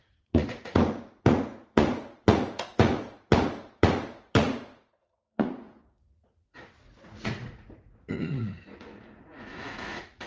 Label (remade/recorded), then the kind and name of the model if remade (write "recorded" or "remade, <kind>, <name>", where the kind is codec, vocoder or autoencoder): remade, vocoder, Vocos